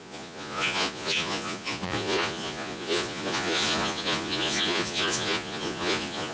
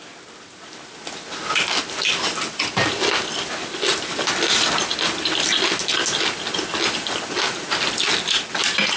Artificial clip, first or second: first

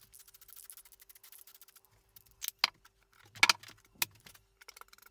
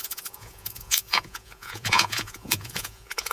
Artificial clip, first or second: second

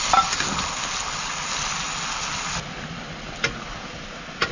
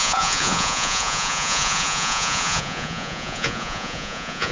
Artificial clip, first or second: second